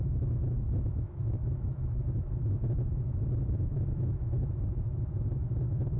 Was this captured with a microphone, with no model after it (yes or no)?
no